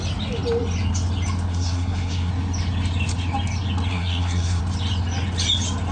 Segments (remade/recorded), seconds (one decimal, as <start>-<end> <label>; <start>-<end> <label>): 0.0-1.5 recorded; 1.5-2.3 remade; 2.3-3.9 recorded; 3.9-4.6 remade; 4.6-5.9 recorded